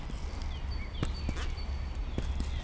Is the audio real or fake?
real